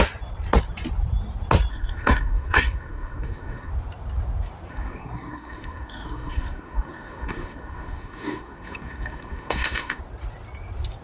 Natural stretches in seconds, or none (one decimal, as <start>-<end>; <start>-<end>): 0.0-1.7; 3.7-4.7; 10.0-11.0